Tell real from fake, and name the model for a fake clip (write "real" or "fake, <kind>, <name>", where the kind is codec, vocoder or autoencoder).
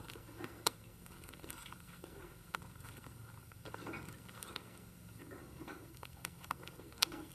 fake, codec, SNAC